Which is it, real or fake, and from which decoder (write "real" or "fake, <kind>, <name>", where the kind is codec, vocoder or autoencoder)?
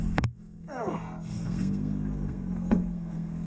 fake, codec, SNAC